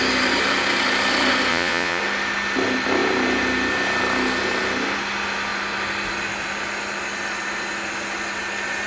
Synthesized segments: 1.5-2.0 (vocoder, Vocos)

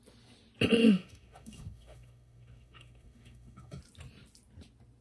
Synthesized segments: 0.8-3.8 (autoencoder, DAC-VAE)

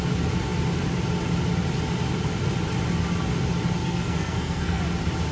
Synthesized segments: 3.8-4.8 (codec, SNAC)

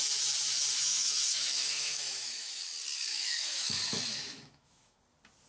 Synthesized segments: 0.9-2.6 (autoencoder, DAC-VAE); 3.1-5.0

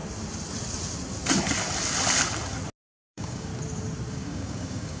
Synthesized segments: 3.0-3.5 (codec, DAC); 4.1-5.0

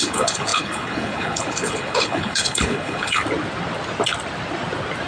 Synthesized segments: 0.0-3.2 (codec, HILCodec)

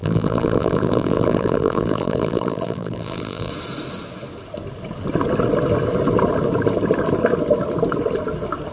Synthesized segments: 0.0-3.5 (vocoder, BigVGAN v2)